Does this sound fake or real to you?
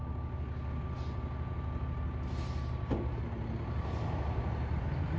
real